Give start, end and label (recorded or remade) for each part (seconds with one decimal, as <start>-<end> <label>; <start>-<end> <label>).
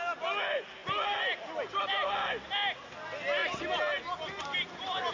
0.0-5.1 recorded